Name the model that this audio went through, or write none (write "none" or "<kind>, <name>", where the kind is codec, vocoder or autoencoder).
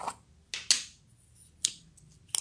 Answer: none